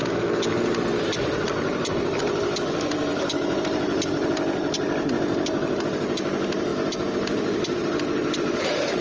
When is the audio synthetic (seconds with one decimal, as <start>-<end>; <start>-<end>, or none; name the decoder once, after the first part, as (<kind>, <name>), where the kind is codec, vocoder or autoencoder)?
0.9-2.2 (vocoder, BigVGAN v2)

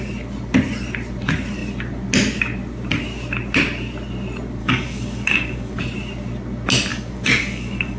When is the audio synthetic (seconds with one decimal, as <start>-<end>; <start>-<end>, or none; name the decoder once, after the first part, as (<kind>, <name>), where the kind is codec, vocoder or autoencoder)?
4.6-5.8 (codec, DAC); 6.9-8.0

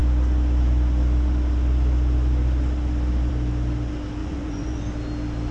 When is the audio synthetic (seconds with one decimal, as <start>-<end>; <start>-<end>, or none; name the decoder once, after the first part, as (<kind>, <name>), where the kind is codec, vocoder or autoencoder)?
4.2-4.8 (vocoder, Vocos)

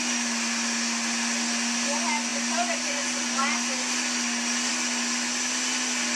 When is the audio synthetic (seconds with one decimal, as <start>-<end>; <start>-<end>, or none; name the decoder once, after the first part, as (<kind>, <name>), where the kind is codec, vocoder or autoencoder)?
none

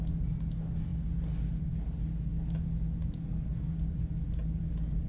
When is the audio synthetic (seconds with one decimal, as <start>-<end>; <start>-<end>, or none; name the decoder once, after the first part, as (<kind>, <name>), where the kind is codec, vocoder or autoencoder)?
none